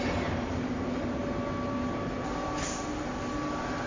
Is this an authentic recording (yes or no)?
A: yes